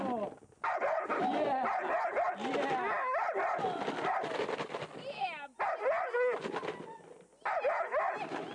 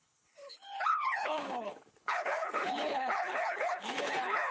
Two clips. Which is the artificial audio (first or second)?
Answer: second